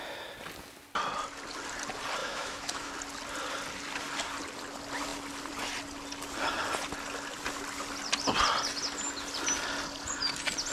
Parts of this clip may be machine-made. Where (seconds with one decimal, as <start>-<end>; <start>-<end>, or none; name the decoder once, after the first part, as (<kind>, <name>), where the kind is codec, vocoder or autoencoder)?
2.2-2.9 (autoencoder, DAC-VAE)